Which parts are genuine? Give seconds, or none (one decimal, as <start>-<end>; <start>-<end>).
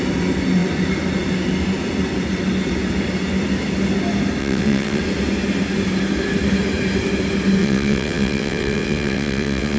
0.0-4.4; 5.0-7.6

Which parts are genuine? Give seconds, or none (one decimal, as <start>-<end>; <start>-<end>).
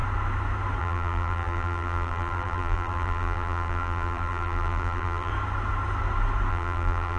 0.0-0.8; 5.3-6.5